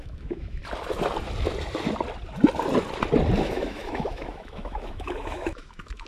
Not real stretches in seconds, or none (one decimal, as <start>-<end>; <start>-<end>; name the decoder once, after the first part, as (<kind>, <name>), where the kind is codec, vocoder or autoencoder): 0.0-0.6 (autoencoder, DAC-VAE); 3.4-6.1